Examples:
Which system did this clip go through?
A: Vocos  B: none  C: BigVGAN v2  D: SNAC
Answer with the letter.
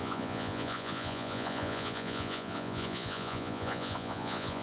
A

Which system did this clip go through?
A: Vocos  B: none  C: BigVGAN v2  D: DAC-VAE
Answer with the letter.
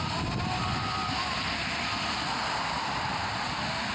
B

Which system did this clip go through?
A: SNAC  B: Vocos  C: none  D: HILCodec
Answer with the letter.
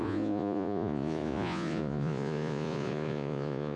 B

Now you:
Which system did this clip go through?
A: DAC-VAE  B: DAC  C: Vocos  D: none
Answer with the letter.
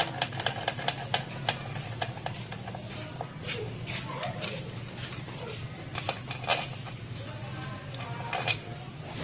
D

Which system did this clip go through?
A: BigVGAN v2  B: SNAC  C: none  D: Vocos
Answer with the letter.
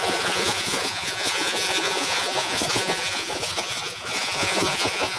D